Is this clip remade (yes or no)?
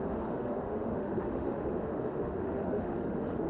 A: yes